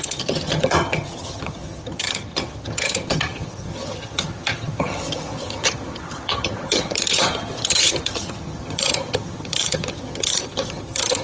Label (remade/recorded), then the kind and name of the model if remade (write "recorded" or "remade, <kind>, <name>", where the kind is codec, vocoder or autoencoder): remade, vocoder, HiFi-GAN